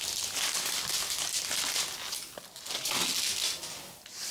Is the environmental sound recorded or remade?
recorded